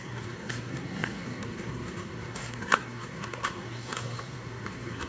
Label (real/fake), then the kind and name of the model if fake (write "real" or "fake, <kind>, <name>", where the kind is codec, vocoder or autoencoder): fake, codec, SNAC